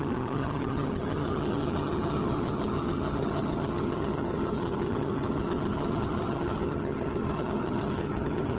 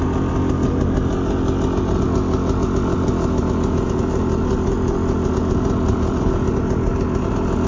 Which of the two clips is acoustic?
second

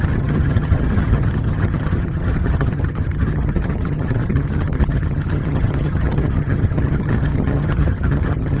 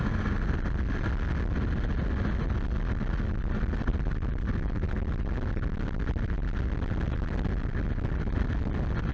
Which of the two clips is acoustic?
second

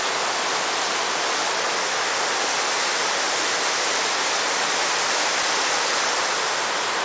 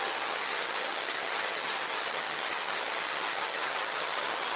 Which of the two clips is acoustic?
first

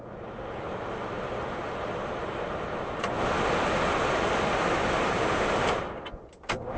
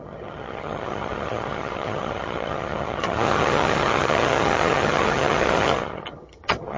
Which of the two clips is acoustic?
first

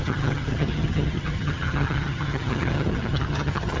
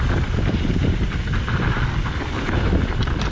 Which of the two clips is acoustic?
second